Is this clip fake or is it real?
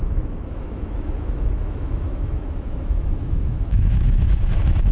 fake